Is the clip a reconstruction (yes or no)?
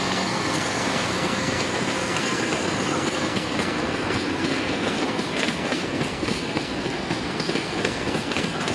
yes